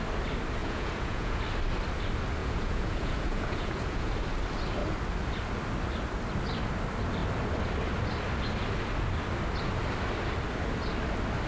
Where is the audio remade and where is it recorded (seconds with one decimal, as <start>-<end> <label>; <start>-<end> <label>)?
0.0-0.6 recorded; 0.6-1.4 remade; 1.4-2.4 recorded; 2.4-4.1 remade; 4.1-11.5 recorded

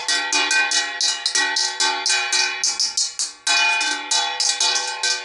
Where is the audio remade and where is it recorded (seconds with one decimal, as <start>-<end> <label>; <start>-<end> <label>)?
0.0-5.2 recorded

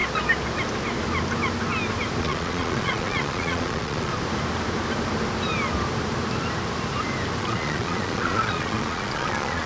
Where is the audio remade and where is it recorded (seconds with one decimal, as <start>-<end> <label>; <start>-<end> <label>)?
0.0-2.2 recorded; 2.2-4.1 remade; 4.1-7.4 recorded; 7.4-9.7 remade